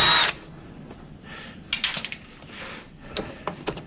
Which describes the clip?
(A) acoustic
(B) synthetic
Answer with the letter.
A